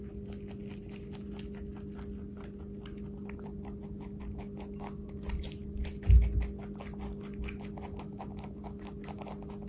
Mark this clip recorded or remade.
recorded